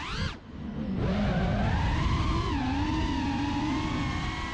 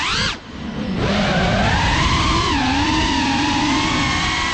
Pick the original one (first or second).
first